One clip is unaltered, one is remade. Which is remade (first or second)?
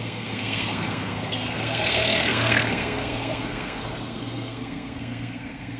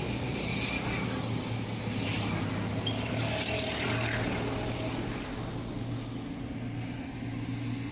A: first